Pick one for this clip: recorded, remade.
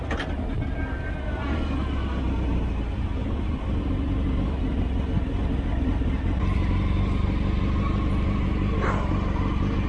recorded